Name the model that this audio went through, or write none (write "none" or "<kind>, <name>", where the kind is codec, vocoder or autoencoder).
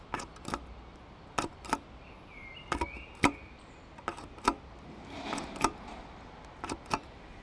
none